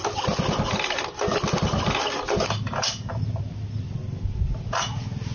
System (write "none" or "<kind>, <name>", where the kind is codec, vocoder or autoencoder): none